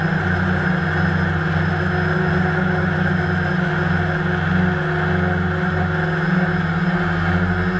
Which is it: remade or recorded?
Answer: recorded